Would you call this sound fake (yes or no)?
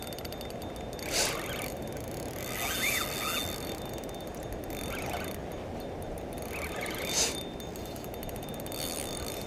no